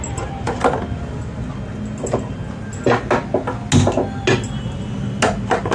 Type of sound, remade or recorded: recorded